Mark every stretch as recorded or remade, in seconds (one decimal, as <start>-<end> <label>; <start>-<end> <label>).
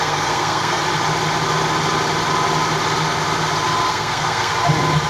0.0-0.8 remade; 0.8-3.9 recorded; 3.9-4.5 remade; 4.5-5.1 recorded